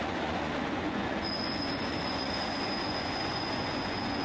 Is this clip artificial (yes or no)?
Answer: yes